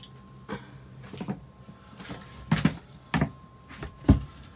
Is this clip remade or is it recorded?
recorded